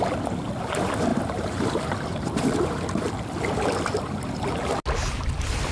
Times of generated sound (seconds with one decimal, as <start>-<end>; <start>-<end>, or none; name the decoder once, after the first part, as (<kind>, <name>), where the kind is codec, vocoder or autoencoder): 1.1-2.8 (vocoder, BigVGAN v2)